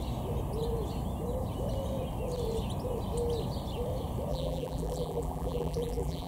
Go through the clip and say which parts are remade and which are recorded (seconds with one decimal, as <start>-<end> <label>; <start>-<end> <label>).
0.0-4.3 recorded; 4.3-6.3 remade